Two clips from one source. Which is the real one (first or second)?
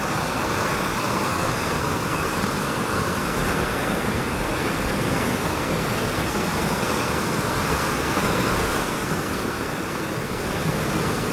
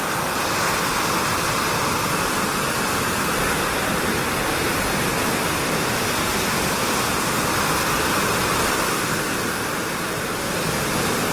second